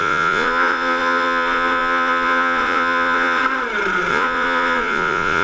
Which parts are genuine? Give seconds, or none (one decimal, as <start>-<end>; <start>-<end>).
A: 3.4-4.1